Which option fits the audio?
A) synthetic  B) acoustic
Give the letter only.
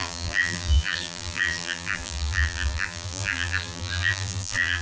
A